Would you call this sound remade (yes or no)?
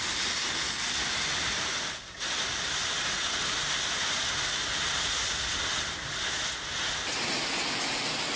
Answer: no